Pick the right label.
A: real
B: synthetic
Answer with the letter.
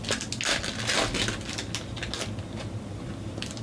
A